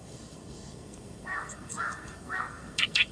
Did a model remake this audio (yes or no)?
yes